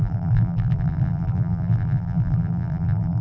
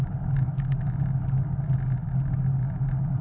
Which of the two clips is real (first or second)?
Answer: second